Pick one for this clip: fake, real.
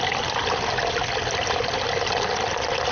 real